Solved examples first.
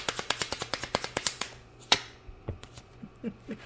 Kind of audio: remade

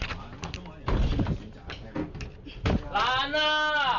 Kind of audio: recorded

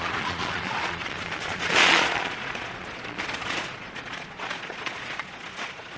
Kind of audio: remade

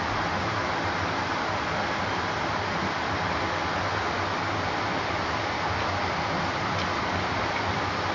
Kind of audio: recorded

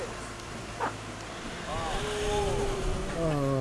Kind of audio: recorded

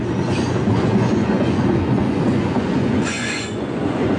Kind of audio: remade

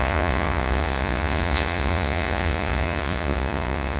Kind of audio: remade